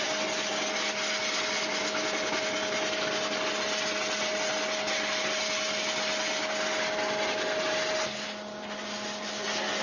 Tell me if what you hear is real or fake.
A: real